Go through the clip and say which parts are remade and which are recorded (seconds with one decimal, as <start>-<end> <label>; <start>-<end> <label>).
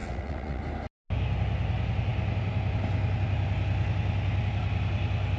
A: 0.0-0.6 remade; 0.6-5.4 recorded